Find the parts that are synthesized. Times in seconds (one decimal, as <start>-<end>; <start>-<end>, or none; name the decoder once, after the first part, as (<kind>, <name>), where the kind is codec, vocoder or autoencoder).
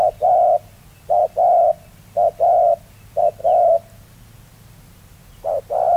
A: 0.0-1.2 (vocoder, BigVGAN v2); 2.8-3.4; 5.6-6.0